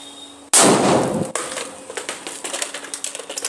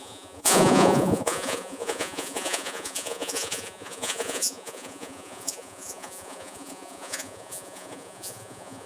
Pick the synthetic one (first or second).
second